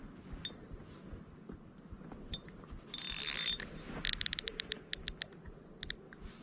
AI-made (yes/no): no